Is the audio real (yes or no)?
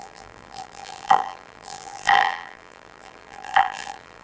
no